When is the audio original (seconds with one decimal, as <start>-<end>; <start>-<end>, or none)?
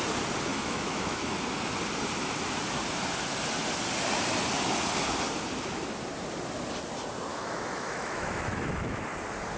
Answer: 0.0-0.5; 1.3-7.3; 9.0-9.6